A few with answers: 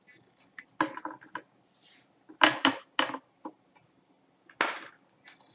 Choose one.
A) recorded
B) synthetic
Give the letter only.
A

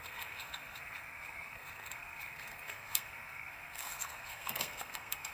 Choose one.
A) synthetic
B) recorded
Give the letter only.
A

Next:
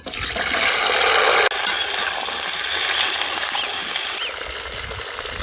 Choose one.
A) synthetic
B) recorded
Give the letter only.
B